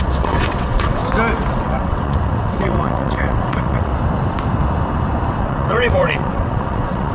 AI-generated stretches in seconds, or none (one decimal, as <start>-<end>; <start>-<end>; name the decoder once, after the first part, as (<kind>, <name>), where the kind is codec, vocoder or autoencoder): 0.0-1.0 (vocoder, WaveNeXt); 1.5-3.9; 5.4-7.1